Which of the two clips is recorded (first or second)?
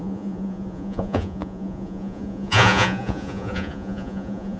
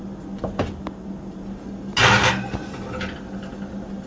second